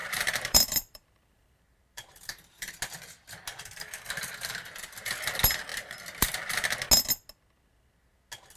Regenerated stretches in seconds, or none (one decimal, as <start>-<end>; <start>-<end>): 0.0-2.7